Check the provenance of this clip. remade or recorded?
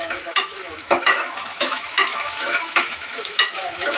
remade